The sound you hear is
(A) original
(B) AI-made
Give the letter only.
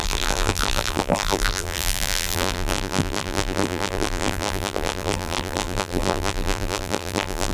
B